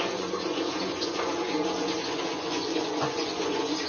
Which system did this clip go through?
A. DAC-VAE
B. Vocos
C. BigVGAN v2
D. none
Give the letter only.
B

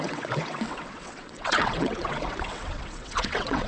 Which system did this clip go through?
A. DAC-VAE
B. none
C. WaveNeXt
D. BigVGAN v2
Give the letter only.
C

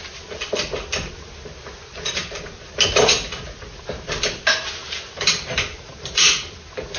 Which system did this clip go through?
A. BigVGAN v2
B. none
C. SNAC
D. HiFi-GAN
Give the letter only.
B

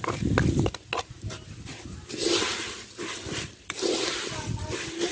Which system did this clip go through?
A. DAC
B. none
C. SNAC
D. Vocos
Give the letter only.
B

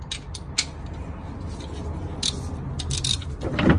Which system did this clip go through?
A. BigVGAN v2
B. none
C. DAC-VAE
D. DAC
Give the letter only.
B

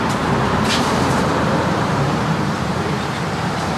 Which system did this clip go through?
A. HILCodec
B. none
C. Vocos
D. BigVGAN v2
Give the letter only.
D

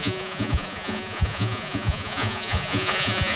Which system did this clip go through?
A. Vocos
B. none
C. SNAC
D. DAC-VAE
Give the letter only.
A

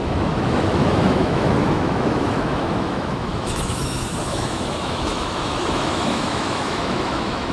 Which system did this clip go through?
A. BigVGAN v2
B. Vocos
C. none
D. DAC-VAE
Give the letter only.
D